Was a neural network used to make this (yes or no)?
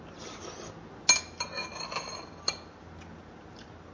no